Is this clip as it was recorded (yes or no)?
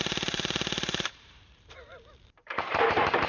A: no